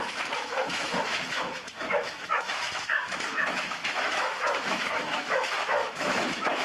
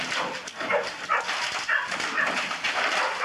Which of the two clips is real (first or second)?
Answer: second